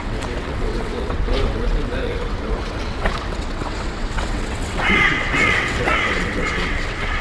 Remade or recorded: remade